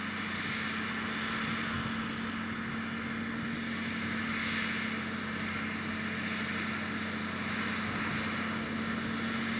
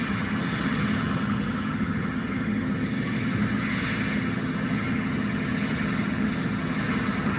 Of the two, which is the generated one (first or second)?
second